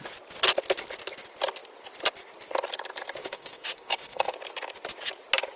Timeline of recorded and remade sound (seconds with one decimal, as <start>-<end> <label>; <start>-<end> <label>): 0.0-3.2 recorded; 3.2-4.3 remade; 4.3-5.6 recorded